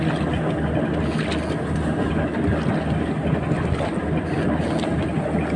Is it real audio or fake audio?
real